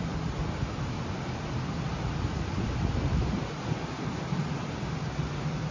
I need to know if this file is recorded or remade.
recorded